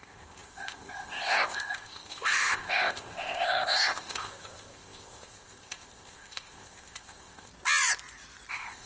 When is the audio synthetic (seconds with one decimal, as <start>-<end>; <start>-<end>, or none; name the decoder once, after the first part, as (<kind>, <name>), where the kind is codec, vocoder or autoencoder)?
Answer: 0.0-7.5 (codec, ZipCodec); 8.5-8.9